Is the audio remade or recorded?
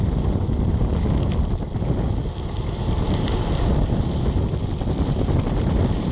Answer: recorded